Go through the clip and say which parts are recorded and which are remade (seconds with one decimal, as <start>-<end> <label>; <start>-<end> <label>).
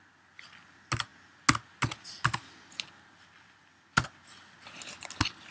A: 0.0-5.5 recorded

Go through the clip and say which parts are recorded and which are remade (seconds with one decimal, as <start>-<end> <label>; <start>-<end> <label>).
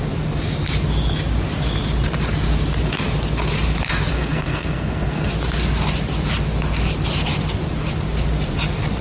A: 0.0-4.1 recorded; 4.1-5.3 remade; 5.3-9.0 recorded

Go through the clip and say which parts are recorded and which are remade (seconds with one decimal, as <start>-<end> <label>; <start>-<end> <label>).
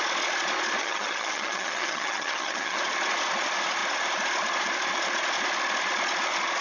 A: 0.0-0.8 recorded; 0.8-2.8 remade; 2.8-6.6 recorded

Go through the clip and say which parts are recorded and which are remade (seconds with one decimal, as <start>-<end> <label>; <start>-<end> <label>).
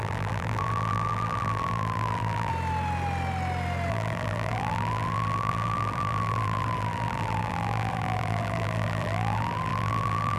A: 0.0-2.5 remade; 2.5-3.9 recorded; 3.9-10.4 remade